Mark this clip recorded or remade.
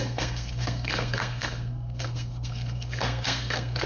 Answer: remade